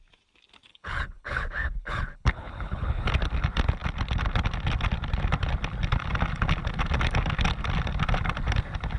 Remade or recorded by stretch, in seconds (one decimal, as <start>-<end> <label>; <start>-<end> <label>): 0.0-0.7 recorded; 0.7-3.1 remade; 3.1-9.0 recorded

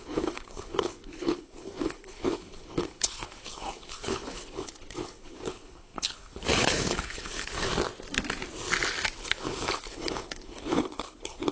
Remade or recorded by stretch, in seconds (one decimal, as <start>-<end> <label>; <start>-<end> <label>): 0.0-7.7 remade; 7.7-9.2 recorded; 9.2-11.5 remade